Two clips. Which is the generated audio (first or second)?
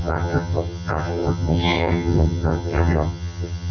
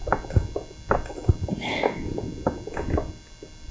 first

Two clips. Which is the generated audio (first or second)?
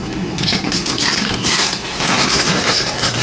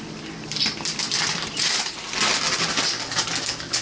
first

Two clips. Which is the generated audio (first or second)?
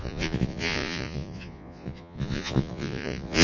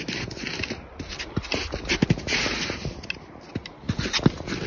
first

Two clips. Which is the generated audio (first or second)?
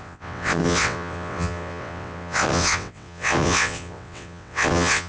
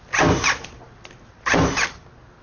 first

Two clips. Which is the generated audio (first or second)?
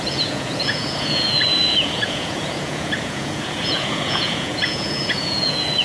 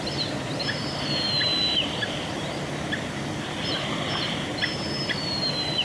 first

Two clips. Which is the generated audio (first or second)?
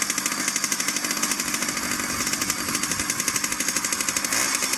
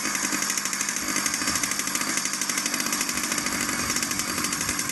second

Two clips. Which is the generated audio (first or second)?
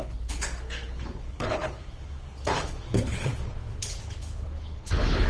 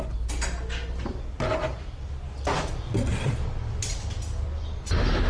first